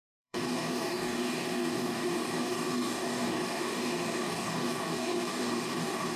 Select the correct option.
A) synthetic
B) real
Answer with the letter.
A